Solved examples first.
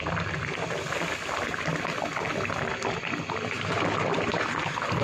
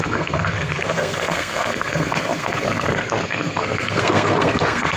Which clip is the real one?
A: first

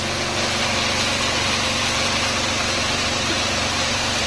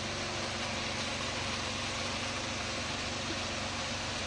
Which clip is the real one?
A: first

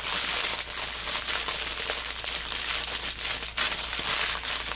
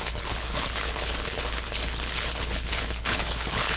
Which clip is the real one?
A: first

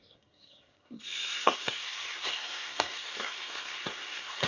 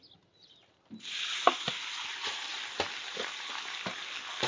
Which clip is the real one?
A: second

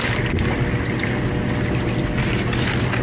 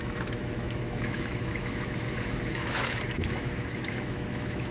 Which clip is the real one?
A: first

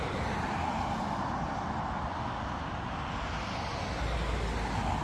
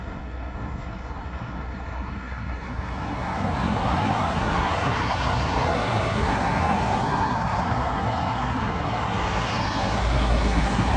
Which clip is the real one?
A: first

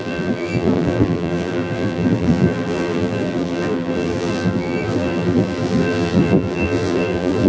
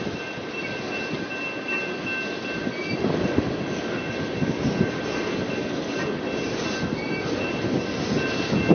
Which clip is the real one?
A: second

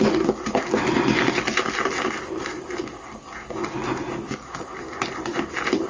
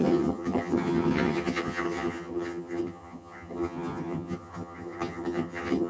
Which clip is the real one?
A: first